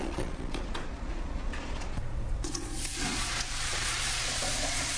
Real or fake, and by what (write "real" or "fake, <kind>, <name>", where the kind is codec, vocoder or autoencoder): fake, vocoder, Vocos